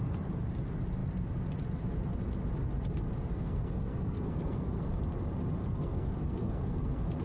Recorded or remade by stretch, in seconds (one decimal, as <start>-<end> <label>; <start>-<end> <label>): 0.0-3.3 recorded; 3.3-5.0 remade; 5.0-5.6 recorded; 5.6-7.2 remade